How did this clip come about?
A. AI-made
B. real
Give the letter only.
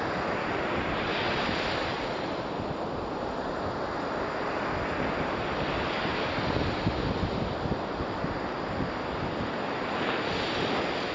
B